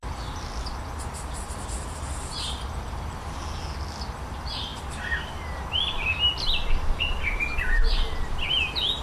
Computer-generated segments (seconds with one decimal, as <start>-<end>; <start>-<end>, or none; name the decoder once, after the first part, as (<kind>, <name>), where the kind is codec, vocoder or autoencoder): none